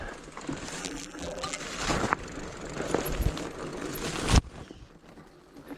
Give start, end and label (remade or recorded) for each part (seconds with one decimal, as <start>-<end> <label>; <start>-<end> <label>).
0.0-0.8 recorded; 0.8-1.6 remade; 1.6-5.8 recorded

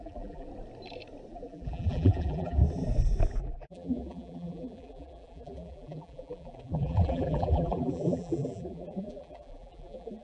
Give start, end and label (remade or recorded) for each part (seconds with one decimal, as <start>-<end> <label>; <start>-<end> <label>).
0.0-0.5 remade; 0.5-1.3 recorded; 1.3-2.6 remade; 2.6-3.4 recorded; 3.4-10.2 remade

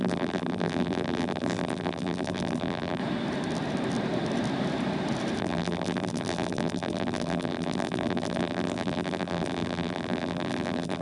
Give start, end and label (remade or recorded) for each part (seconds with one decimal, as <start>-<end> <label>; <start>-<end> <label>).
0.0-3.0 remade; 3.0-5.4 recorded; 5.4-11.0 remade

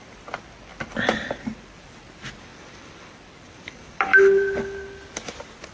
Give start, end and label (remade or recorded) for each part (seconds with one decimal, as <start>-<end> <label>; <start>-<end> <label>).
0.0-0.7 recorded; 0.7-2.0 remade; 2.0-2.5 recorded; 2.5-4.6 remade; 4.6-5.7 recorded

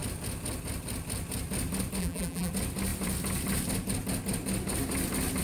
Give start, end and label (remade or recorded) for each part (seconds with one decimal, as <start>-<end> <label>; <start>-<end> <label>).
0.0-2.0 recorded; 2.0-2.5 remade; 2.5-5.4 recorded

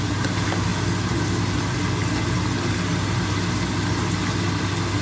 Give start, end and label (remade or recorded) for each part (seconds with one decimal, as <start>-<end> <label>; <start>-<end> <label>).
0.0-5.0 recorded

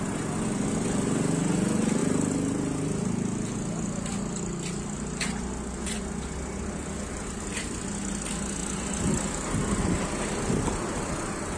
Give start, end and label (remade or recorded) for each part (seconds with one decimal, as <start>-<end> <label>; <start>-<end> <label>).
0.0-11.6 recorded

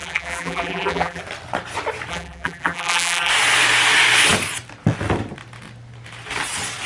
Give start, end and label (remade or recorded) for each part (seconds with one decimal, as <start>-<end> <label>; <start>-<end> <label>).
0.0-1.2 remade; 1.2-2.1 recorded; 2.1-3.3 remade; 3.3-6.9 recorded